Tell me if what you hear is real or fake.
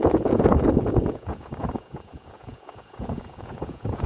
fake